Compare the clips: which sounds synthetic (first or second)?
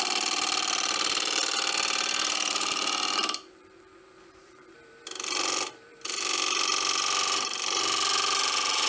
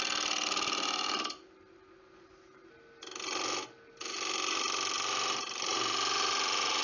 first